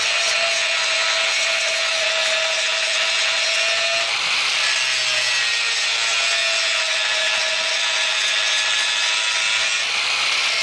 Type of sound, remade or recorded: recorded